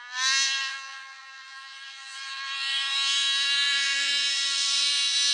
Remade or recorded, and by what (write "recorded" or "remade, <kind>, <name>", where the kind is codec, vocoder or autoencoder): remade, vocoder, BigVGAN v2